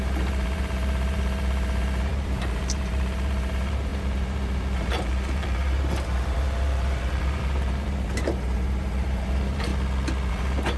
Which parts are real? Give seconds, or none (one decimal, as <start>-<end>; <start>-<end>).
9.7-10.3